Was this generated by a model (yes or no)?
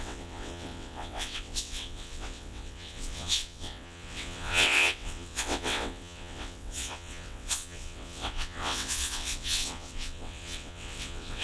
yes